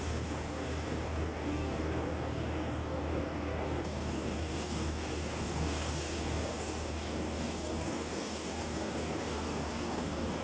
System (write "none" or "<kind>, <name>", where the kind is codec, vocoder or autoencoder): codec, DAC